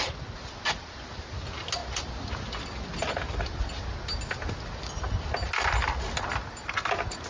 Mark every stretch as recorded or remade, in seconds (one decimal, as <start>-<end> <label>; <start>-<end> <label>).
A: 0.0-7.3 recorded